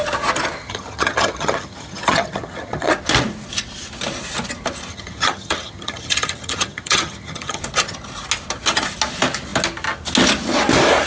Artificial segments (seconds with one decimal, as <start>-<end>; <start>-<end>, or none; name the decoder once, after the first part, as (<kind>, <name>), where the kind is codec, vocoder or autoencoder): 0.6-2.9 (vocoder, HiFi-GAN); 4.9-7.6